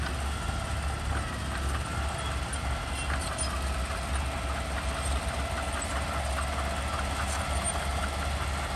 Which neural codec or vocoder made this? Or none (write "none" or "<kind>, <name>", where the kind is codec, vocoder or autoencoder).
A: none